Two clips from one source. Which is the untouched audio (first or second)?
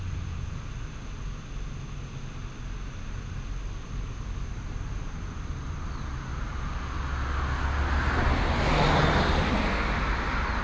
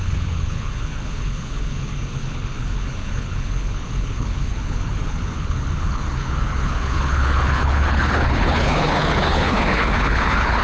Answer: first